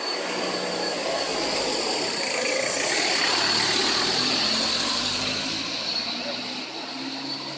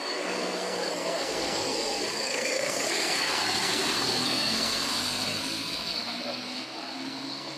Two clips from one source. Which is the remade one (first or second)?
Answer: second